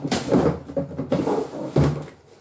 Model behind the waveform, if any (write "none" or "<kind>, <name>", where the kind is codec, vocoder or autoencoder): none